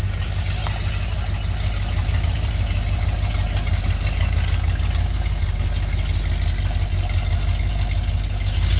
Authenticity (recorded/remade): recorded